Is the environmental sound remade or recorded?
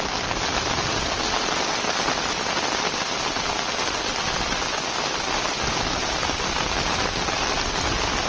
recorded